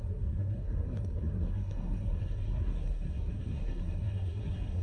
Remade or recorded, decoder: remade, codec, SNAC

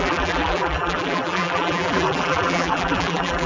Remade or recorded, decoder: remade, vocoder, BigVGAN v2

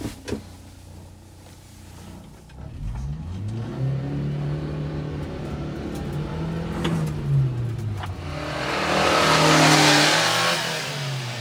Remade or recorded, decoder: recorded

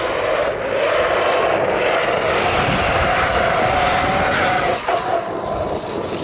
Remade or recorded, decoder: recorded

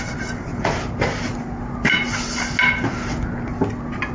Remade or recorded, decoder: recorded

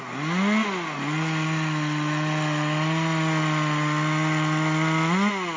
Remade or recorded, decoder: recorded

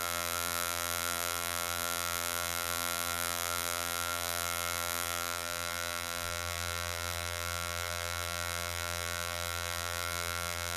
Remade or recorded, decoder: remade, vocoder, BigVGAN v2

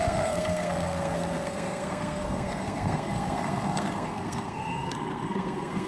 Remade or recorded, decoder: remade, codec, SNAC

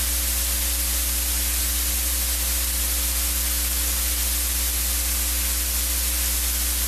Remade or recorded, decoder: recorded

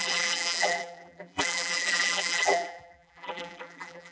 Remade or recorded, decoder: remade, vocoder, BigVGAN v2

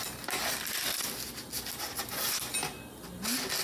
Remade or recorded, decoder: recorded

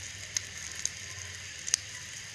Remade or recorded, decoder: recorded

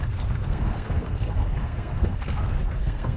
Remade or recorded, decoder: remade, codec, SNAC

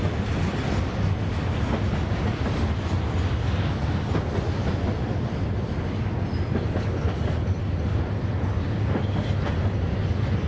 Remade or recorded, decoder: recorded